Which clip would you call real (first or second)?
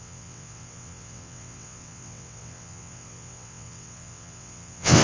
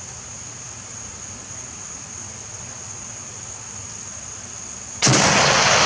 second